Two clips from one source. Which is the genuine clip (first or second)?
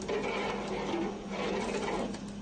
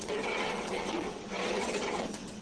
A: first